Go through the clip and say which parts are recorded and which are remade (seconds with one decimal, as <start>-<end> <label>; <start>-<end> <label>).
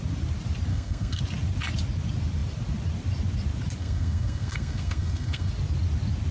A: 0.0-0.7 recorded; 0.7-1.2 remade; 1.2-3.8 recorded; 3.8-5.5 remade; 5.5-6.3 recorded